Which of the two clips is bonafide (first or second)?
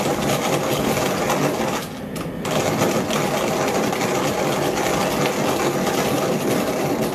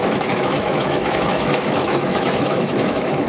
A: first